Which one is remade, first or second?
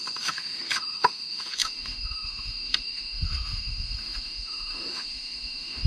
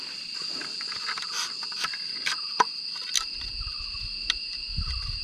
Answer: first